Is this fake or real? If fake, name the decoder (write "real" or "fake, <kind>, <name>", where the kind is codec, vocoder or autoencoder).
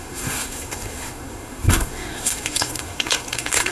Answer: fake, codec, SNAC